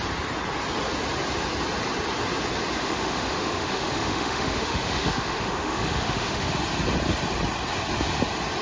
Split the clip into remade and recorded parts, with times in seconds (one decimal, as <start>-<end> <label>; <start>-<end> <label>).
0.0-2.8 recorded; 2.8-6.5 remade; 6.5-8.6 recorded